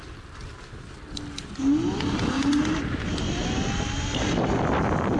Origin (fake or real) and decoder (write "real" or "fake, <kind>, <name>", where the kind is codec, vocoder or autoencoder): real